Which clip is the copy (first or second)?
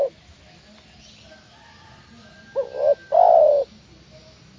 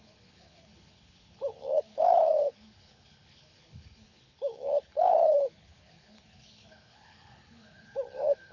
second